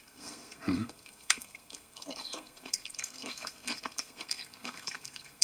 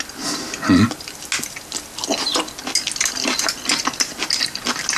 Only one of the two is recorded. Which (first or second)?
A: second